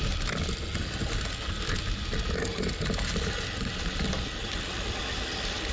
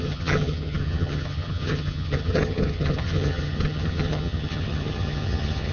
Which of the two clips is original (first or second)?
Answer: first